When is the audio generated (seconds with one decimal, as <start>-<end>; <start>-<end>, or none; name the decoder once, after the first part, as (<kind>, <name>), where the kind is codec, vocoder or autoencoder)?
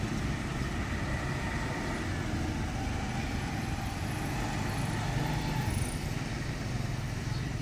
none